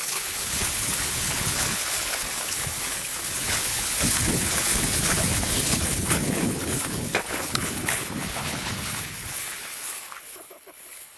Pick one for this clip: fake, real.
fake